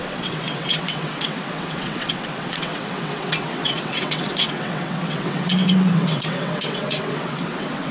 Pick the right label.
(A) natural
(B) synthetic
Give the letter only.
B